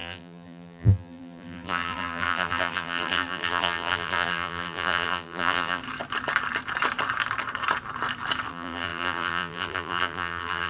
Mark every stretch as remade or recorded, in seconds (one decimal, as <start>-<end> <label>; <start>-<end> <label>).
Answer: 0.0-5.8 remade; 5.8-8.5 recorded; 8.5-10.7 remade